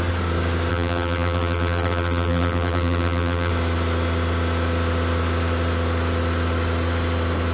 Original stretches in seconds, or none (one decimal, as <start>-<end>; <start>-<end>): 0.0-0.7; 3.5-7.5

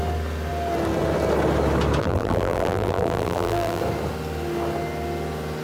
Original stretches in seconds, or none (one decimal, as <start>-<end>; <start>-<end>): 0.0-2.0; 3.8-5.6

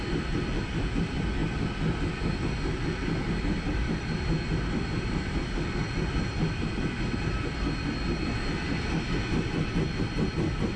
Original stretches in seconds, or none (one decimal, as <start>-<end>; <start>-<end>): 0.0-10.8

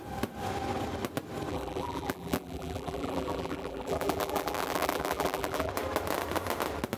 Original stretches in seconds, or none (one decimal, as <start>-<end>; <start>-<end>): 0.0-1.5; 5.7-7.0

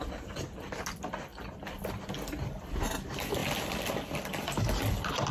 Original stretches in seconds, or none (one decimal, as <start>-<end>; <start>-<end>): 0.0-5.3

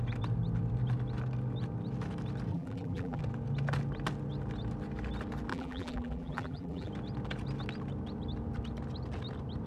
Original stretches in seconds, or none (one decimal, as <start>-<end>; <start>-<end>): 0.0-2.5; 3.2-5.5; 6.9-9.7